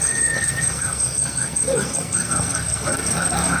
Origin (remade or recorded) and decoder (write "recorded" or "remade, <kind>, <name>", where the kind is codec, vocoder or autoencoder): remade, codec, SNAC